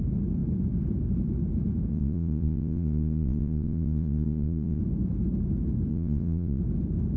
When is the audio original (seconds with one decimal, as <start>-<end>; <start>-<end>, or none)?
0.0-1.9; 4.8-5.9; 6.6-7.2